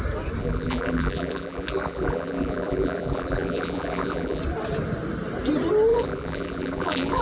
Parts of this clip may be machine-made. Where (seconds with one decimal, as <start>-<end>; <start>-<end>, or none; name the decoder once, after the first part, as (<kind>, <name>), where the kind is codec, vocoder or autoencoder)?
0.4-4.4 (vocoder, BigVGAN v2); 5.9-7.2